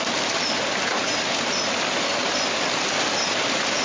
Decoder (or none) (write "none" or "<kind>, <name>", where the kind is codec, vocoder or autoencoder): none